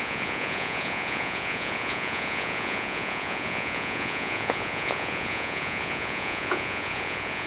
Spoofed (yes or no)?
yes